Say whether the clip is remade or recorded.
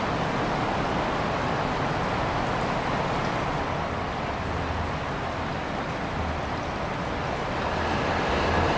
recorded